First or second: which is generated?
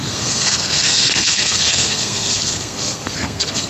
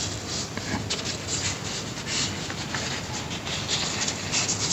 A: first